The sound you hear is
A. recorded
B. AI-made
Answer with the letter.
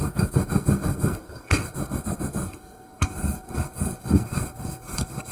B